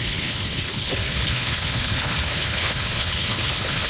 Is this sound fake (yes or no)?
yes